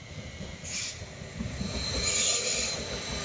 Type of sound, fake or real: real